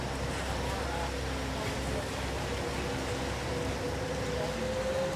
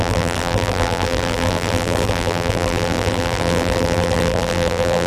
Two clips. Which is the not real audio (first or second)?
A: second